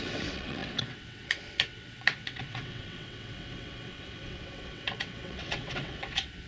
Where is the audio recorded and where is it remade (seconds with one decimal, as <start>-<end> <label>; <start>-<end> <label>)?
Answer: 0.0-6.5 remade